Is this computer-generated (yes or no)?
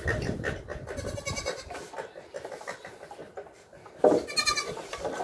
no